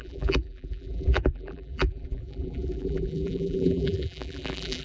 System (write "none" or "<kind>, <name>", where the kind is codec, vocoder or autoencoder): vocoder, BigVGAN v2